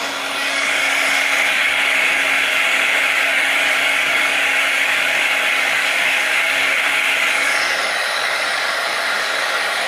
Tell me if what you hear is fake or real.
fake